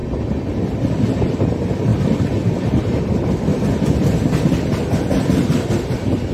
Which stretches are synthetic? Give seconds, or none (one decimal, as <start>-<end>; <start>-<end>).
1.9-3.0; 3.5-6.3